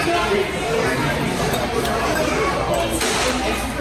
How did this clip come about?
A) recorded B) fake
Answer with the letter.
A